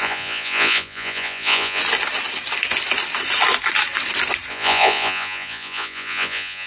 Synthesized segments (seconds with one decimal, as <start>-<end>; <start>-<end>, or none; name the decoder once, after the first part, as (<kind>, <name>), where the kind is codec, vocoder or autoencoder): 0.0-1.8 (vocoder, Vocos); 4.5-6.7